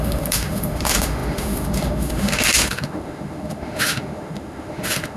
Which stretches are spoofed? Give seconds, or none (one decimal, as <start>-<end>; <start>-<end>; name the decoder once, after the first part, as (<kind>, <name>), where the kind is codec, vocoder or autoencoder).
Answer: 0.0-5.2 (autoencoder, DAC-VAE)